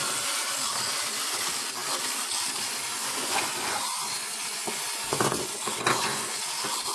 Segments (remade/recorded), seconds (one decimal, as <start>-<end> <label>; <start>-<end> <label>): 0.0-3.0 recorded; 3.0-6.4 remade; 6.4-6.9 recorded